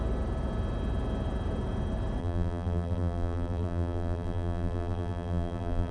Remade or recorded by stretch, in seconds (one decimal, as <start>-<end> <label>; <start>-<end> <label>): 0.0-2.2 recorded; 2.2-5.9 remade